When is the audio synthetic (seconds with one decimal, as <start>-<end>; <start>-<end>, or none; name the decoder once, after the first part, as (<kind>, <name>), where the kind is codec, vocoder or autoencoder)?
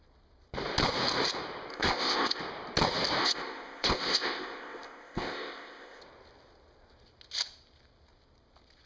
1.7-2.4 (codec, ZipCodec); 3.2-6.0